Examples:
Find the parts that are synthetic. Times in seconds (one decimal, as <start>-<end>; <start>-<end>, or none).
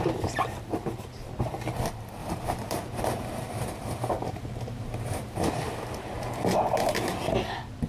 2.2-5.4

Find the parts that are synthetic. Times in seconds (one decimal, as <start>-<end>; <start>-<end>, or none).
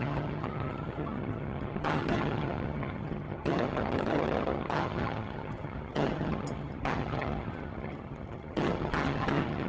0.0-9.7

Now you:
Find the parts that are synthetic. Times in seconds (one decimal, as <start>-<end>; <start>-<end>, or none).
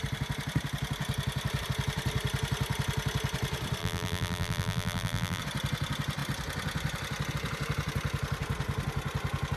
3.8-5.4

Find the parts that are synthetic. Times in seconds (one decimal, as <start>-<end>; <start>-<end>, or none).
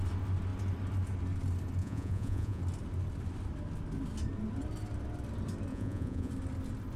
1.8-2.6; 5.7-6.3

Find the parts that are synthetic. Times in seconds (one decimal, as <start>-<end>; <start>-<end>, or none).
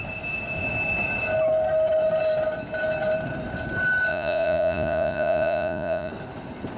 4.1-6.1